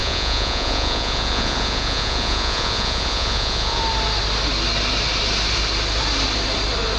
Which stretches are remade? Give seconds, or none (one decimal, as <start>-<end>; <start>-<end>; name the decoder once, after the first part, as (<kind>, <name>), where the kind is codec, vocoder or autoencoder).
0.0-3.8 (vocoder, Vocos)